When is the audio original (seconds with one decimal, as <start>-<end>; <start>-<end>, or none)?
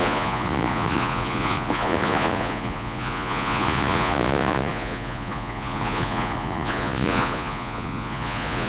none